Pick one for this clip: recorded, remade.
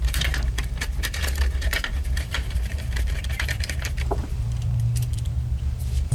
remade